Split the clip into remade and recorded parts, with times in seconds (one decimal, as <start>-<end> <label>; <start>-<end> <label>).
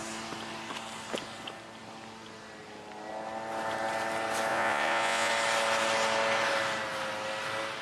0.0-4.5 recorded; 4.5-5.3 remade; 5.3-7.8 recorded